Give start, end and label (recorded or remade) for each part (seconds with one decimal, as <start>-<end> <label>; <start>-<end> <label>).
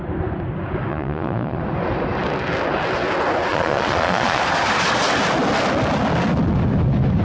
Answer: 0.0-0.9 recorded; 0.9-1.6 remade; 1.6-3.5 recorded; 3.5-4.4 remade; 4.4-7.2 recorded